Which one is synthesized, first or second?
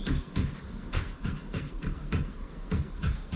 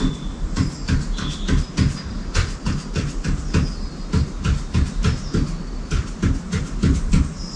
first